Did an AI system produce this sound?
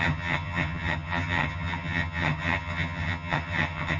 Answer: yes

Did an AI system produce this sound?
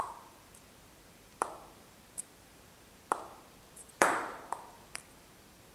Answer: yes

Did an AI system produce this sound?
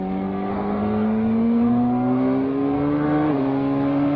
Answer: yes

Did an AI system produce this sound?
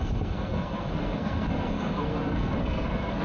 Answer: yes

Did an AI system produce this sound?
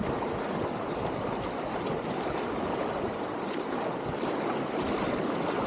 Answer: no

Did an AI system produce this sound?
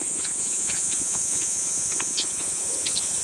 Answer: yes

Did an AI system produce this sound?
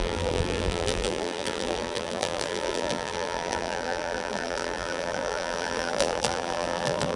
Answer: yes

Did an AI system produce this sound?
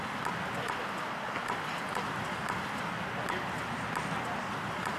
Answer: no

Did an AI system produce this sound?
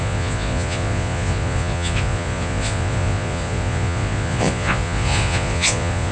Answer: yes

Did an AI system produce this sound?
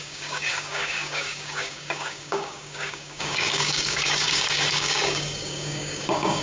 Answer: yes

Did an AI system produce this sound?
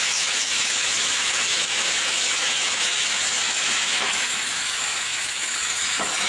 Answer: yes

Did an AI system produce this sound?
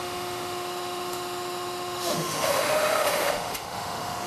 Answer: yes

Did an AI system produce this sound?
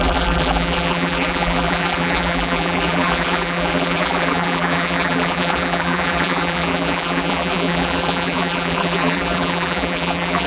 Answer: yes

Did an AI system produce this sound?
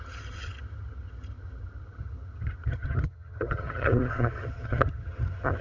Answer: yes